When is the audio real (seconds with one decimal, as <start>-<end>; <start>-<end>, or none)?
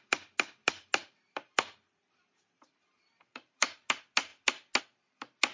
0.0-0.6; 3.9-5.5